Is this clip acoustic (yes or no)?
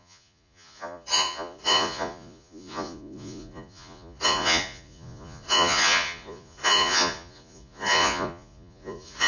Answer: no